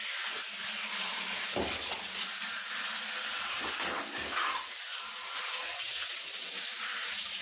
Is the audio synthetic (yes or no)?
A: no